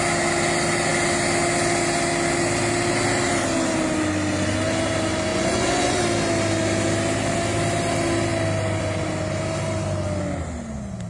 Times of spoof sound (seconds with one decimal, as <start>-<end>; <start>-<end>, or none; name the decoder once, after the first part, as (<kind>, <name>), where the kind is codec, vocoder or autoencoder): 5.3-6.0 (vocoder, Vocos)